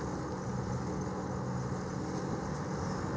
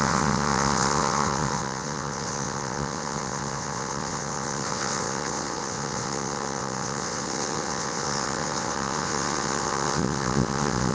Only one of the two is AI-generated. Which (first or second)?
second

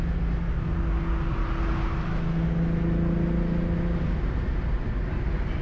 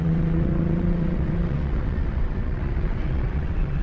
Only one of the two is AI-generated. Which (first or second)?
second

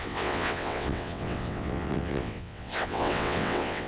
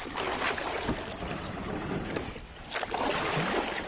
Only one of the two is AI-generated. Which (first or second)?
first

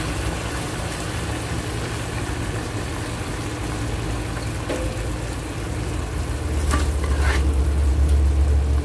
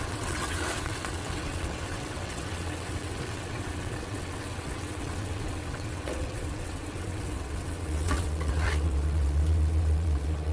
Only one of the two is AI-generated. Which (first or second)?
second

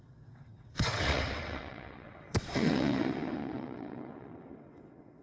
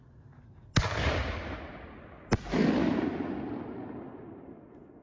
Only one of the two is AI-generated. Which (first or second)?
first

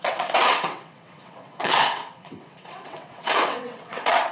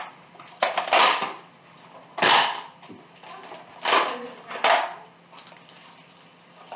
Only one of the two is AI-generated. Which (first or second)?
first